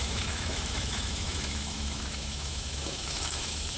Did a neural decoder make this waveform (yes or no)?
yes